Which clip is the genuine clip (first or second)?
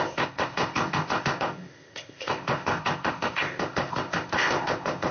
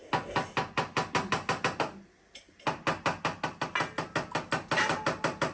second